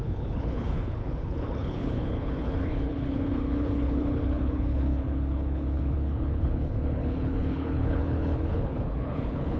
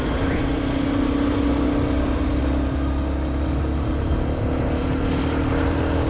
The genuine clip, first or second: second